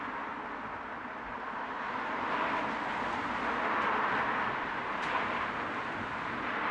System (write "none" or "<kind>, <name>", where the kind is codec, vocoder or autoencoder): none